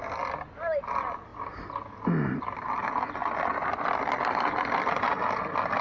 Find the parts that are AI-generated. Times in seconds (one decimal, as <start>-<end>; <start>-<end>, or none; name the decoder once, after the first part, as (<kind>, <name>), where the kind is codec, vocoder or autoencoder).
none